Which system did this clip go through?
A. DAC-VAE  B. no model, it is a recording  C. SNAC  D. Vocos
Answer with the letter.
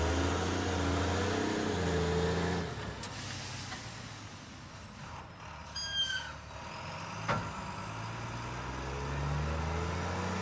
B